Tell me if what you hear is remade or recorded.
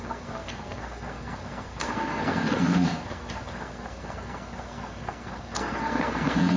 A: remade